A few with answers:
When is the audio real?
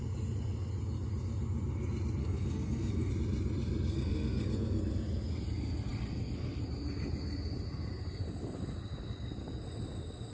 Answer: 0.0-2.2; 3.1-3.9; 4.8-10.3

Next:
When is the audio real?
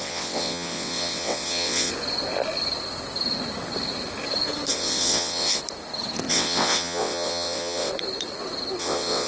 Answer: 1.9-4.7; 5.6-6.3; 7.9-8.8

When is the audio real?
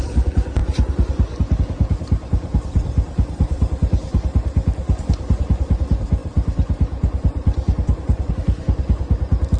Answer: 0.0-9.6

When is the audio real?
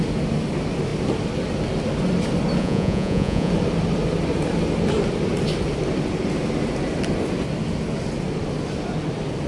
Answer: 0.0-2.6; 3.5-9.5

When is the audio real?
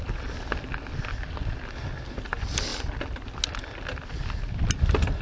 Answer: 0.0-5.2